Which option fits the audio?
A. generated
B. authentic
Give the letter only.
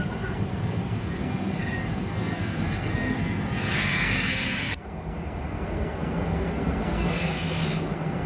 A